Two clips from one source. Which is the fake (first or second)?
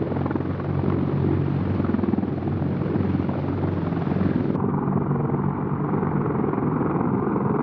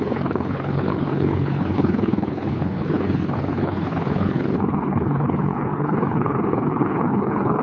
second